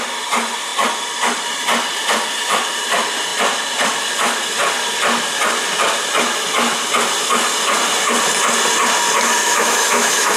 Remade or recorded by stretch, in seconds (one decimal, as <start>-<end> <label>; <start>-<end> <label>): 0.0-9.4 recorded; 9.4-10.4 remade